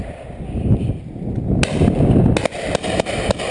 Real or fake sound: real